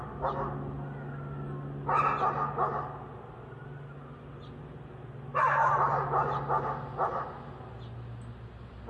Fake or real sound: real